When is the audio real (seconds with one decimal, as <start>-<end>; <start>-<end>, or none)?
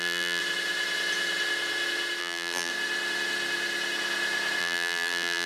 0.4-2.2; 2.7-4.6